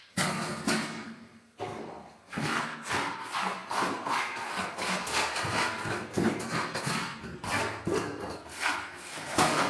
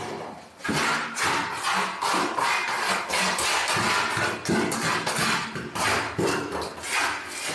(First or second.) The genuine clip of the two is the second